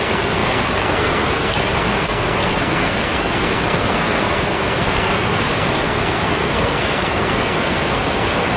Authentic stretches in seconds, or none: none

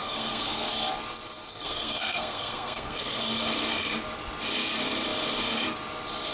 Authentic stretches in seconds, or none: 0.7-1.5; 3.2-6.3

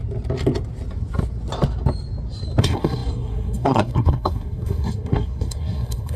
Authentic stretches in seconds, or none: 0.0-2.6

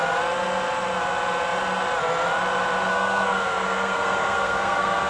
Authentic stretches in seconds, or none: 0.0-2.9

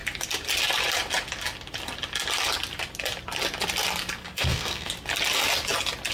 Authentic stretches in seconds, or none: 0.0-4.2; 4.9-6.1

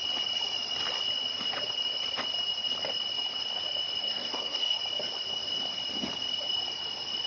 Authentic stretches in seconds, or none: 0.0-4.0; 4.8-7.3

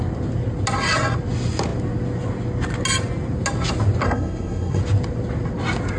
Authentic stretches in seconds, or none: 0.0-4.0; 4.8-6.0

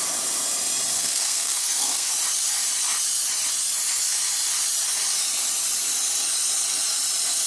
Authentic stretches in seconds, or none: 0.0-0.9; 2.1-7.5